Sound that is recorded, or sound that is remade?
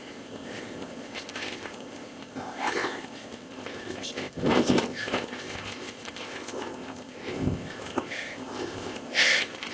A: remade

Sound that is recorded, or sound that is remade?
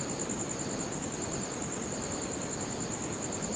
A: recorded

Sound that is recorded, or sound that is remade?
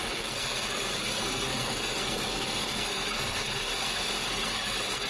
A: remade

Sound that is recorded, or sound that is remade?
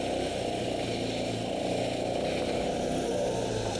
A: recorded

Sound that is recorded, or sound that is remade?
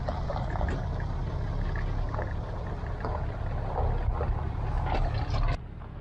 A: recorded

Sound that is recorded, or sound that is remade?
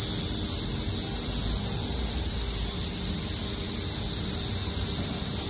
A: recorded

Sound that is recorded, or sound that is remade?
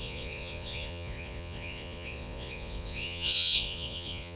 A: remade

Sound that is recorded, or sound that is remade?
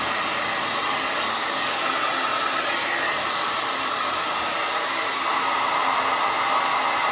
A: recorded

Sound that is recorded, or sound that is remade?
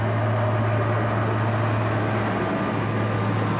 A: recorded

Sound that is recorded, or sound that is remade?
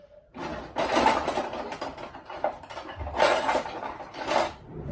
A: recorded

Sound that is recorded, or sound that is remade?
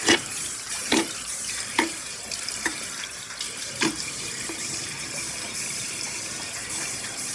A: remade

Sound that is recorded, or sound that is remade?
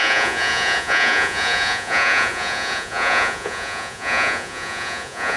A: remade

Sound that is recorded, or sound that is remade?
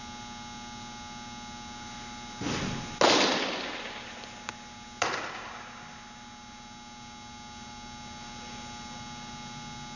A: recorded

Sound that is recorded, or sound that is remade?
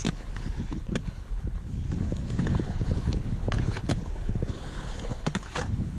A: remade